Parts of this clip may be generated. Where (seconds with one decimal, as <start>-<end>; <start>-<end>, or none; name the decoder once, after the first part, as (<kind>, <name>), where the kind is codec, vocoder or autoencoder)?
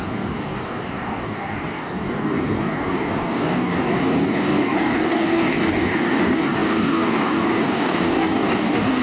0.0-9.0 (codec, DAC)